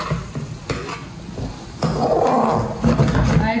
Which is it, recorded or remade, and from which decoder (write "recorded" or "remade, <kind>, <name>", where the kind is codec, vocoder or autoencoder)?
recorded